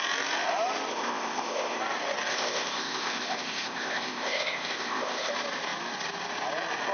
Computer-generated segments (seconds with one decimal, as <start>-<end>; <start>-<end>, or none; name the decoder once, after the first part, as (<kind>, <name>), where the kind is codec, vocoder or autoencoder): 0.9-1.8 (codec, ZipCodec); 2.3-5.3